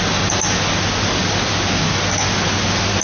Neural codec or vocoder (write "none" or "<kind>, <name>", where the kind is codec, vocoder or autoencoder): none